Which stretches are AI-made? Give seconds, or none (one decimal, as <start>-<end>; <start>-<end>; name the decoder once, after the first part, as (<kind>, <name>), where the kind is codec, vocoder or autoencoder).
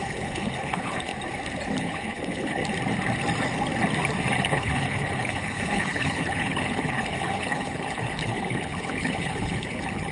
0.0-1.1 (codec, HILCodec); 1.7-2.6; 4.4-10.1